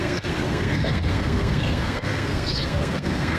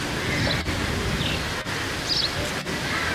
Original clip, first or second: second